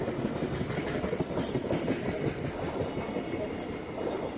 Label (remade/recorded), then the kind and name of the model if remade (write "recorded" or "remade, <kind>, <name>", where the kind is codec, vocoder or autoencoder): recorded